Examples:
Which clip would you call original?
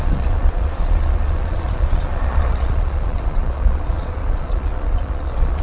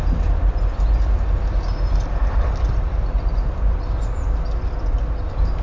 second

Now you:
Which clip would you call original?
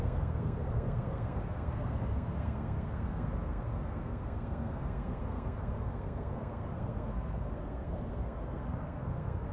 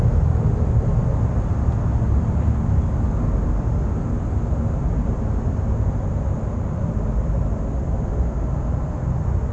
second